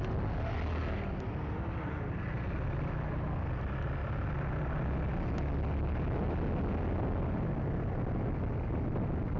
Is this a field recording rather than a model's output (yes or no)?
yes